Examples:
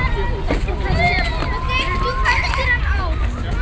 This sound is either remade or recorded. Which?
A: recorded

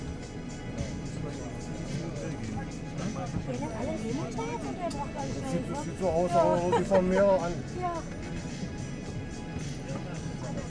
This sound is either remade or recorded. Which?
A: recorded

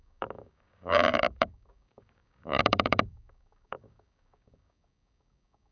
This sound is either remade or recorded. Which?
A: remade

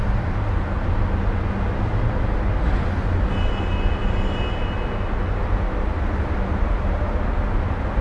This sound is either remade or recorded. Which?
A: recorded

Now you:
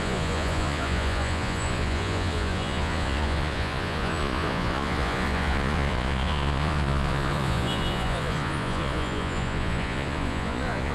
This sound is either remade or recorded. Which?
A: remade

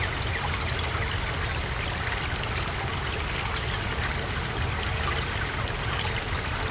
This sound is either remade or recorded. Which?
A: recorded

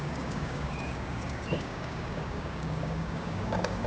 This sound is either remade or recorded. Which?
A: remade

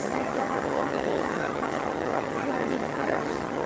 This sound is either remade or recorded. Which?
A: remade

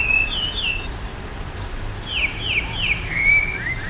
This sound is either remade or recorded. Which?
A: recorded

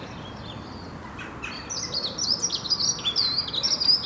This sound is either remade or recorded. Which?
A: recorded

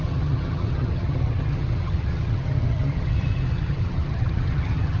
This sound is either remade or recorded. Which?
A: remade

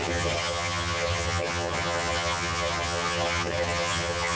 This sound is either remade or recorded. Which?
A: remade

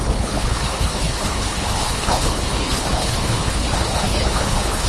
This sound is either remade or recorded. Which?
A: remade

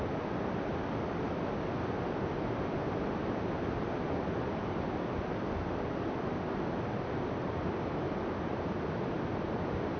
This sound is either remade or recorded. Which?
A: recorded